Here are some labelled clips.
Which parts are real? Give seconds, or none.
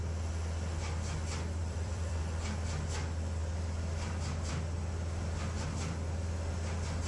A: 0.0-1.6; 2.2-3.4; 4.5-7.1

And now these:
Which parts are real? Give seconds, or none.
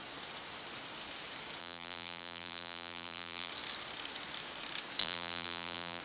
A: 0.0-1.6; 3.5-5.0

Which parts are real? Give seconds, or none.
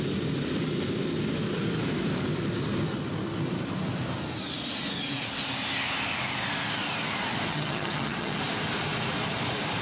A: 0.0-7.5; 8.4-9.8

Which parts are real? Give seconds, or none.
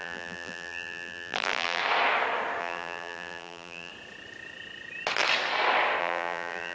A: 1.8-2.6; 3.9-6.0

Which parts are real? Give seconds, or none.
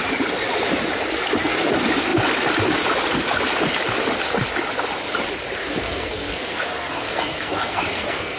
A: 0.0-5.6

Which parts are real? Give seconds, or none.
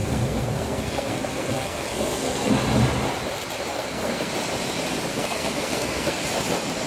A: 2.5-3.7; 4.3-5.1; 6.2-6.9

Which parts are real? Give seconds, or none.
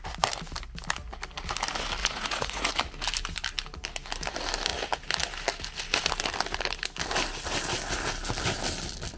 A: 0.0-2.0; 2.7-9.2